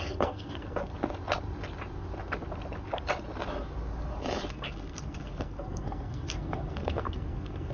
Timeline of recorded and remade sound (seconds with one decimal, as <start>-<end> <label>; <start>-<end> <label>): 0.0-0.9 remade; 0.9-4.5 recorded; 4.5-7.7 remade